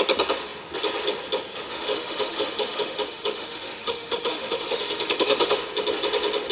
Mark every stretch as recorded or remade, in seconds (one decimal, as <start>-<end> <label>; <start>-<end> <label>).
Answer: 0.0-1.7 recorded; 1.7-5.6 remade; 5.6-6.5 recorded